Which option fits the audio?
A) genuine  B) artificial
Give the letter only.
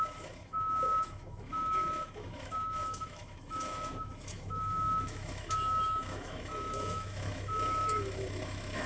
B